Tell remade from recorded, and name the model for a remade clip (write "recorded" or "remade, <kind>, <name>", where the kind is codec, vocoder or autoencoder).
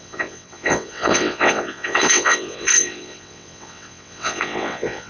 remade, vocoder, WaveNeXt